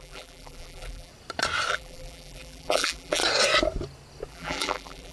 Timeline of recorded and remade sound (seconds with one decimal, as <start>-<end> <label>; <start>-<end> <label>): 0.0-1.1 remade; 1.1-1.7 recorded; 1.7-3.2 remade; 3.2-4.3 recorded; 4.3-5.1 remade